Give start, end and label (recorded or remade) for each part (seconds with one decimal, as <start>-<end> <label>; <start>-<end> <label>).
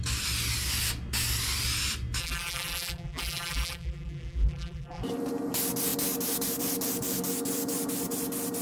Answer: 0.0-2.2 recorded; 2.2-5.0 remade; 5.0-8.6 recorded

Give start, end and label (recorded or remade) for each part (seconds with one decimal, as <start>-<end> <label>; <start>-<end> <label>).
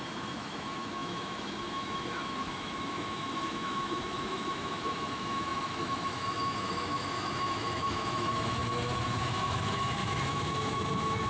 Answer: 0.0-11.3 remade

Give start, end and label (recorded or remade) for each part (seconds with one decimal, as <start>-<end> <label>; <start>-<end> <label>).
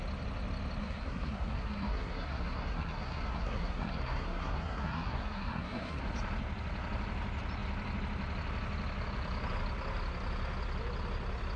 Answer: 0.0-0.8 recorded; 0.8-6.0 remade; 6.0-11.6 recorded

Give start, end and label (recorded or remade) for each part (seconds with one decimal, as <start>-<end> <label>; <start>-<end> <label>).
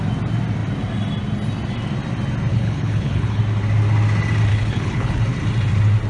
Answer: 0.0-2.5 recorded; 2.5-3.4 remade; 3.4-4.5 recorded; 4.5-5.2 remade; 5.2-6.1 recorded